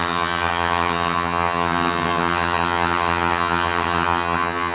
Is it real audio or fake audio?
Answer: fake